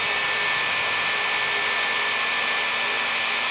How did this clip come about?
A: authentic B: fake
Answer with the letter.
A